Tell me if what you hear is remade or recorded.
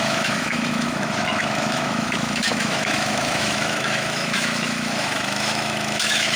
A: remade